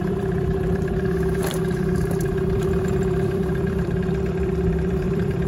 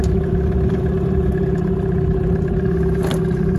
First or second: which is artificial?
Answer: first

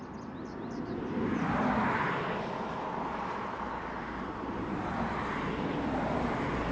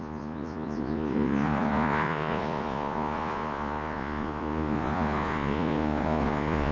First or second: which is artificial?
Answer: second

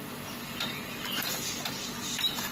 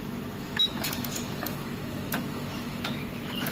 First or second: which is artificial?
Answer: second